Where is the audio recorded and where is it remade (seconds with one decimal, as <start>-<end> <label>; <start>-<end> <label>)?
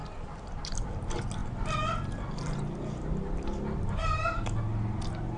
0.0-5.4 recorded